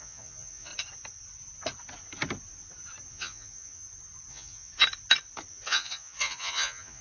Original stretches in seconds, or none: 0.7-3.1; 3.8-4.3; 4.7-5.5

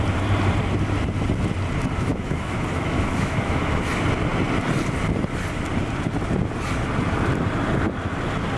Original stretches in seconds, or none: 0.0-2.1; 3.8-8.6

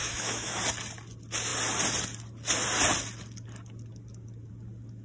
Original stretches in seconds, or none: 0.6-5.0